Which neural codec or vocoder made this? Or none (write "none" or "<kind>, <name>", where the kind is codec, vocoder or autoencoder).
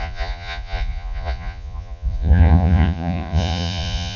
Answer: vocoder, Vocos